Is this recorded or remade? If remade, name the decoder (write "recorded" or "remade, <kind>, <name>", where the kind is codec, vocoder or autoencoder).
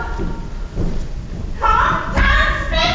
recorded